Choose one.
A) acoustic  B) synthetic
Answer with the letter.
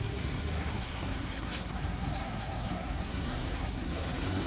B